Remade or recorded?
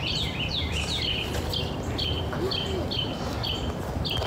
remade